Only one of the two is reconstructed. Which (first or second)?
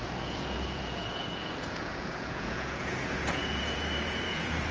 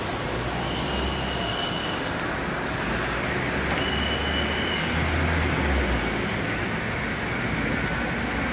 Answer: first